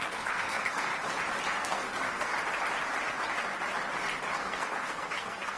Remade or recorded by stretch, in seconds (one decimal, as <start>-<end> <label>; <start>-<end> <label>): 0.0-0.9 remade; 0.9-1.5 recorded; 1.5-2.3 remade; 2.3-4.3 recorded; 4.3-5.6 remade